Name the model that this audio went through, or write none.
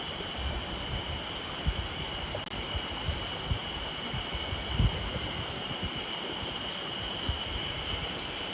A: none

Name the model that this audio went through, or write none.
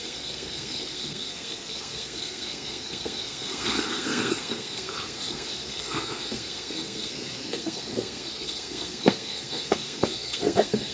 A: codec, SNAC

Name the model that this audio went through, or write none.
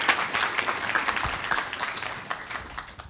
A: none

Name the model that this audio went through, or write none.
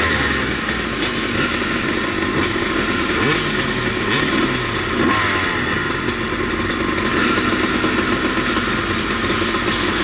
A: none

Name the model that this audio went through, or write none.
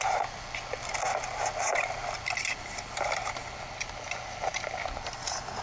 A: none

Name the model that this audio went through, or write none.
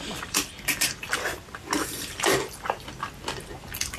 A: vocoder, BigVGAN v2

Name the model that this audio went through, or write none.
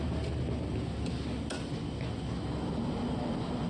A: none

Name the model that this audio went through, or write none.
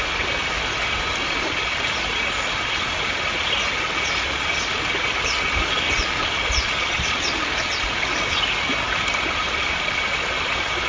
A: none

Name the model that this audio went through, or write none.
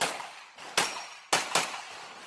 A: none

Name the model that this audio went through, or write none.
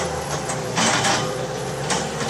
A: none